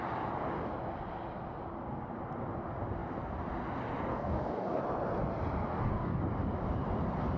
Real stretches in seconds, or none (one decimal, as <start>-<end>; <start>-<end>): 0.0-4.1; 4.8-5.7; 6.2-7.4